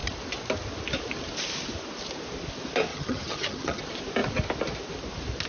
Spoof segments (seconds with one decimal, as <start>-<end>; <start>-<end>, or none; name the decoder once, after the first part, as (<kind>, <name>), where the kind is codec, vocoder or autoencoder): 2.9-3.8 (vocoder, HiFi-GAN)